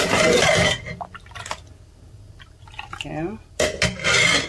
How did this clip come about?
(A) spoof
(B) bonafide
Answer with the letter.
B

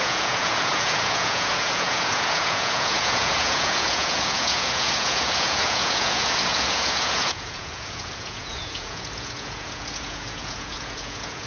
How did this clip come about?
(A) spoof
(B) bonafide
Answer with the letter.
A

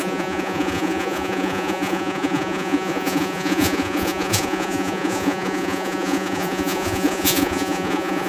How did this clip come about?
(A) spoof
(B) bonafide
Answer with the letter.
A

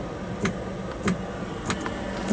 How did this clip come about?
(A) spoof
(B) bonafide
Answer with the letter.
B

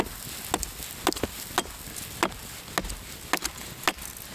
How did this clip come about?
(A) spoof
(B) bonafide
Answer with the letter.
B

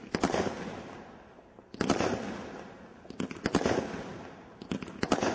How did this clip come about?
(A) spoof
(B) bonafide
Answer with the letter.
B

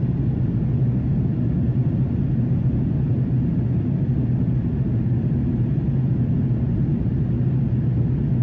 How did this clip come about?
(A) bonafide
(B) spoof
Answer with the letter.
A